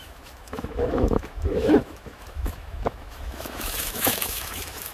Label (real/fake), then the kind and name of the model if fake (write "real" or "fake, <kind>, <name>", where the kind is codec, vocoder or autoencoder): fake, autoencoder, DAC-VAE